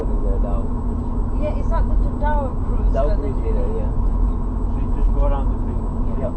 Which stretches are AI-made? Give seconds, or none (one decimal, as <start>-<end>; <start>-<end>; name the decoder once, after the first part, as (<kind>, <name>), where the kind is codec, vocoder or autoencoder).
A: none